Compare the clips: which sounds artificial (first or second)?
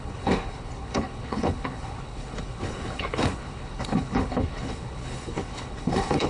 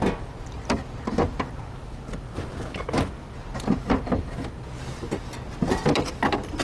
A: first